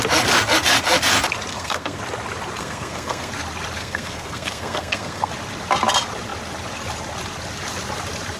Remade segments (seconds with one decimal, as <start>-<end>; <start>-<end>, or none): 1.5-2.0; 2.6-3.3; 3.8-5.3